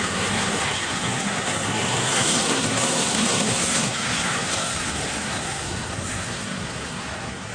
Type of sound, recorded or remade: remade